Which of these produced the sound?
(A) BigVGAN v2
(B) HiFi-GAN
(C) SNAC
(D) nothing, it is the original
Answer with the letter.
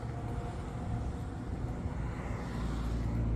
D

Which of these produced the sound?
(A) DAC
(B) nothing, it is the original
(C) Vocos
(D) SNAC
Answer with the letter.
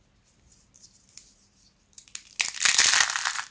B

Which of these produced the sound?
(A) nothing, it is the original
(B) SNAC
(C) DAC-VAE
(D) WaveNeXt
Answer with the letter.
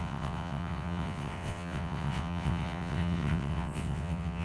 D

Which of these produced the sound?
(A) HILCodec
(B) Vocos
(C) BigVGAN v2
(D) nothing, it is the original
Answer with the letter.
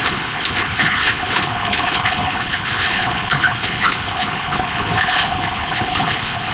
A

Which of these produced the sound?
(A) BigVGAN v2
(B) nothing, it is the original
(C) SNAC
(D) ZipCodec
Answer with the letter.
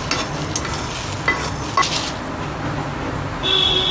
B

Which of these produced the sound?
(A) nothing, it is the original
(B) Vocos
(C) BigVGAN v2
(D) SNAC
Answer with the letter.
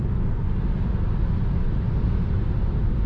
A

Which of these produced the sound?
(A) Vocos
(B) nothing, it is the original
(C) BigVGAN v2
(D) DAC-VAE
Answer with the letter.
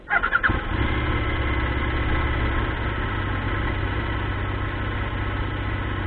B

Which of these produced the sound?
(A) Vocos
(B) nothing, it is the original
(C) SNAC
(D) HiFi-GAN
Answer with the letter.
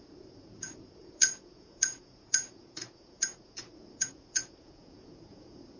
A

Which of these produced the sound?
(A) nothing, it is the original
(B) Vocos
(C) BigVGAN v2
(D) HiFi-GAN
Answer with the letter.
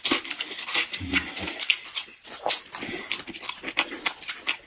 A